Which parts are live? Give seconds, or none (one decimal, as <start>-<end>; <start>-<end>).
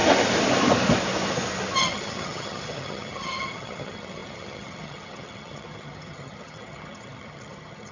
0.0-1.8